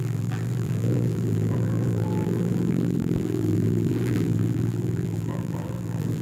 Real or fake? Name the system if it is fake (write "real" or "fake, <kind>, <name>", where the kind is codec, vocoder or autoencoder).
fake, vocoder, BigVGAN v2